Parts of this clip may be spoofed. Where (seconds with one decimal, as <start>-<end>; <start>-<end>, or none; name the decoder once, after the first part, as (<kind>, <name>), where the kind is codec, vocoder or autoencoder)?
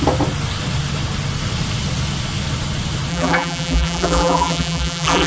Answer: 3.1-5.3 (vocoder, BigVGAN v2)